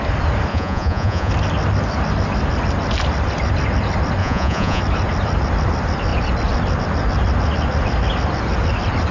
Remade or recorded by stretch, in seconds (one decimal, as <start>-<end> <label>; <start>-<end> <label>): 0.0-0.5 recorded; 0.5-1.3 remade; 1.3-4.2 recorded; 4.2-4.8 remade; 4.8-9.1 recorded